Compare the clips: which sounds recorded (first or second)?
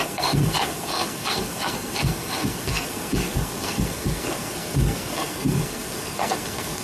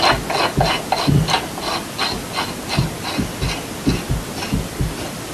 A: second